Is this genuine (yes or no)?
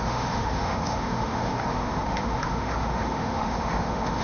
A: no